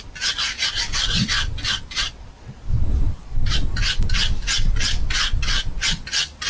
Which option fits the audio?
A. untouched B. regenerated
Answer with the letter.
A